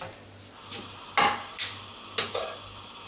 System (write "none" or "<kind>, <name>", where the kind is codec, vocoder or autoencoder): none